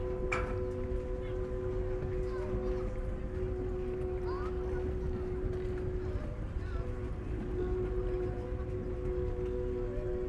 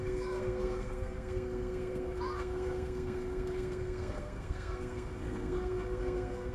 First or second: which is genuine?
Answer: first